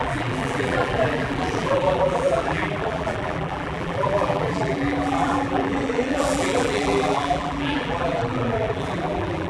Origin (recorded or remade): remade